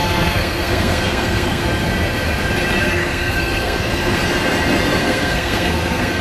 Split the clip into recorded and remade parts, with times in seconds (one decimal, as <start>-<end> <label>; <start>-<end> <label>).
0.0-1.6 remade; 1.6-2.8 recorded; 2.8-4.2 remade; 4.2-5.0 recorded; 5.0-6.2 remade